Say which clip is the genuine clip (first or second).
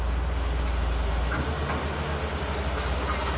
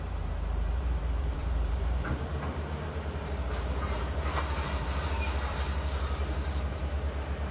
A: first